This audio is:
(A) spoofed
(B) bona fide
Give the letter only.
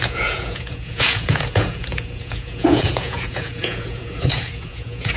A